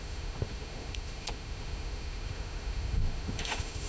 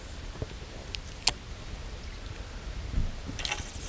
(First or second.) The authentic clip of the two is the second